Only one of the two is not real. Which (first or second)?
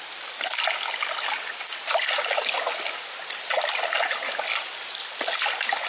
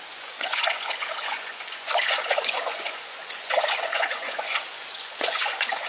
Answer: second